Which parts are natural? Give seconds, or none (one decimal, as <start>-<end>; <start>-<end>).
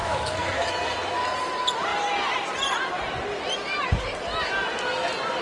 0.7-5.4